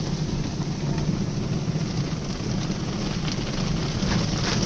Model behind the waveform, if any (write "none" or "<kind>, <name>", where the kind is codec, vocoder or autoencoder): none